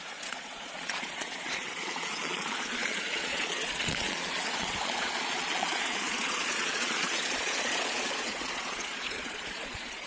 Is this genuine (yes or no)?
no